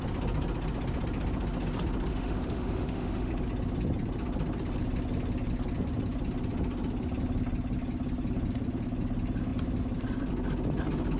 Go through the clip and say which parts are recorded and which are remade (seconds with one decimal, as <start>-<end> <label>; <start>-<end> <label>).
0.0-2.1 recorded; 2.1-3.3 remade; 3.3-11.2 recorded